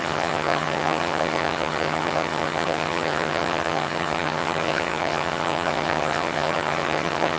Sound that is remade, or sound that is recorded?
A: remade